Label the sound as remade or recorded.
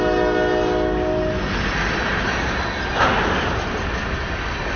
recorded